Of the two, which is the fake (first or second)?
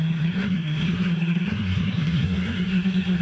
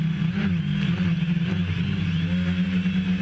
first